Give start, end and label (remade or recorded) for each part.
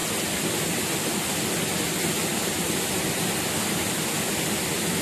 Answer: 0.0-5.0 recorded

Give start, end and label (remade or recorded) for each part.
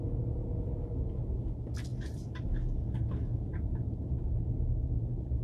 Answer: 0.0-1.9 recorded; 1.9-2.5 remade; 2.5-5.4 recorded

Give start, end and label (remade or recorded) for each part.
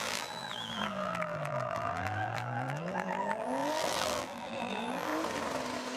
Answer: 0.0-5.1 remade; 5.1-6.0 recorded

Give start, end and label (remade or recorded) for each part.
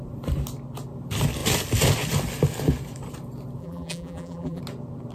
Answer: 0.0-3.6 recorded; 3.6-4.6 remade; 4.6-5.1 recorded